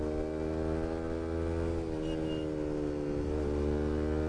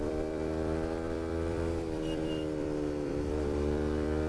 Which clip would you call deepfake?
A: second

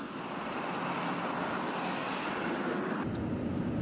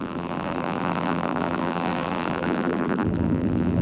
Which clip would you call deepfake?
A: second